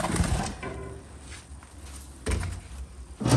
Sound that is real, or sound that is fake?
real